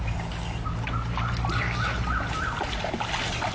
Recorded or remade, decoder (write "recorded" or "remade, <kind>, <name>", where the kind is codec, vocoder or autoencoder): recorded